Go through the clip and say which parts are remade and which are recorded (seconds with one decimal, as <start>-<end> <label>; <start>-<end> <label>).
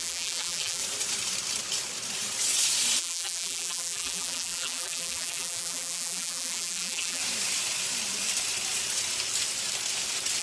0.0-0.8 remade; 0.8-3.0 recorded; 3.0-7.2 remade; 7.2-10.4 recorded